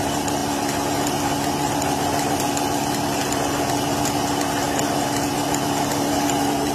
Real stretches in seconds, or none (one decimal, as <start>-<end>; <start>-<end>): 0.0-6.7